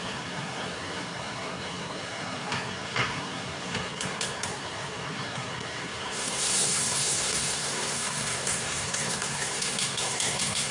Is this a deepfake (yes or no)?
yes